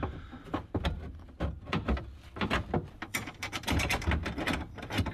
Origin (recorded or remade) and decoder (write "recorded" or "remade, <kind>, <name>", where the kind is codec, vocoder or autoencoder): remade, vocoder, BigVGAN v2